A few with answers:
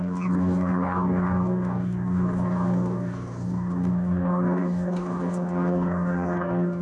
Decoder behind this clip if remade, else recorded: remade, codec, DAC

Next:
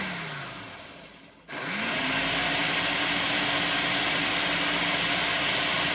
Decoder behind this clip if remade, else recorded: recorded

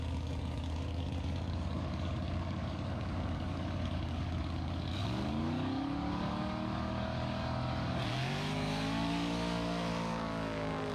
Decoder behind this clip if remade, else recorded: remade, codec, DAC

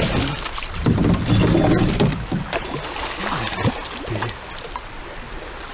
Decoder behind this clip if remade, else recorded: recorded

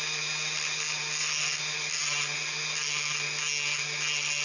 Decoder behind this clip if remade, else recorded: recorded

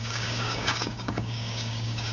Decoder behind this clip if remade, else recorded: remade, codec, DAC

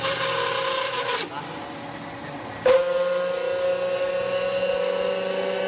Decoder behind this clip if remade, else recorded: recorded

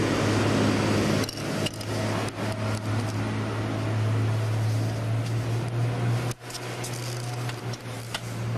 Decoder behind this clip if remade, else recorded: recorded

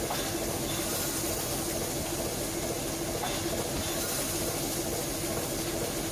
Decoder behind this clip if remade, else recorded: recorded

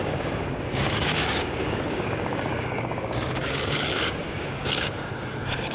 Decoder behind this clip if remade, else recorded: remade, codec, DAC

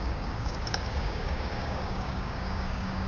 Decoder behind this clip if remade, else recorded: remade, codec, DAC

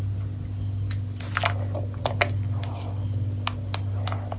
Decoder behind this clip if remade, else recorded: recorded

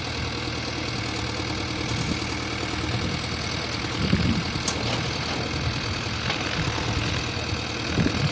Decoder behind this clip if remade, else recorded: recorded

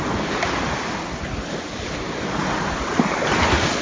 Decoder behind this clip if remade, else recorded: recorded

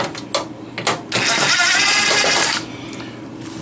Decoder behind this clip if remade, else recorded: recorded